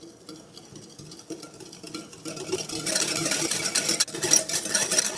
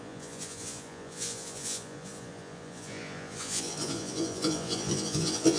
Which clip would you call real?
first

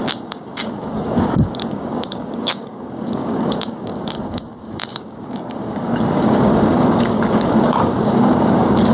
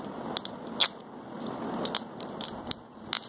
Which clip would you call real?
second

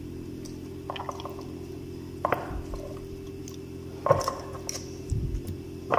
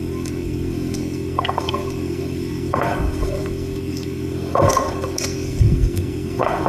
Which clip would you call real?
first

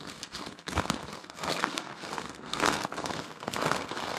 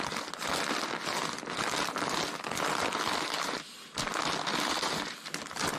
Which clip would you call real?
second